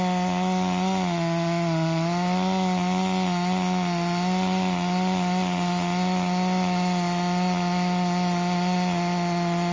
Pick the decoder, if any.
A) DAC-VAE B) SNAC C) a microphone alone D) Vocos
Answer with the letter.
C